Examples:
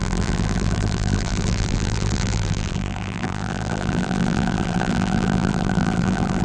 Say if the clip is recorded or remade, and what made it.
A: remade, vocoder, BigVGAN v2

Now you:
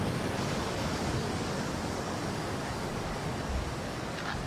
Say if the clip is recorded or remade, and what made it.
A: remade, codec, DAC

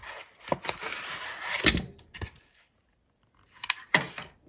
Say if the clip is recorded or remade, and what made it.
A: recorded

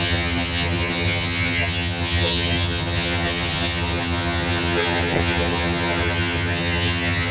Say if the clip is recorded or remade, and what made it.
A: remade, vocoder, HiFi-GAN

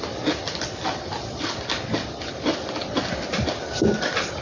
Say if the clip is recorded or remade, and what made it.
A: recorded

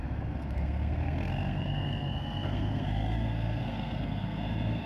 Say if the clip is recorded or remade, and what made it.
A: remade, codec, SNAC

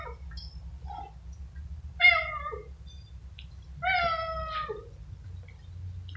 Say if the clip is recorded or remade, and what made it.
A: recorded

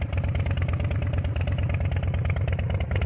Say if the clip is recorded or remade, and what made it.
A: recorded